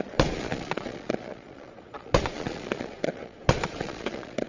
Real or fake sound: fake